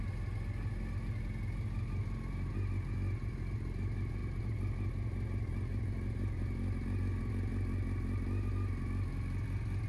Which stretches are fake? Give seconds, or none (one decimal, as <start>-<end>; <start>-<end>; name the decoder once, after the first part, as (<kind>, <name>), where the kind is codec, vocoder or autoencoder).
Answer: none

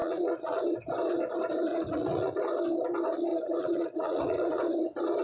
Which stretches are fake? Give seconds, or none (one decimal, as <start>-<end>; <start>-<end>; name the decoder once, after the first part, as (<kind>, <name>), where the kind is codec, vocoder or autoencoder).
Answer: 0.0-0.6 (vocoder, Vocos); 1.7-2.4; 3.3-4.6